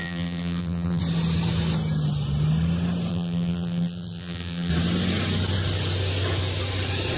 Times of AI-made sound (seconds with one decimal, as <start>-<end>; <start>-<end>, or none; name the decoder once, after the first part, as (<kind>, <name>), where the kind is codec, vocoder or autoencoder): 0.0-1.0 (vocoder, BigVGAN v2); 3.1-4.7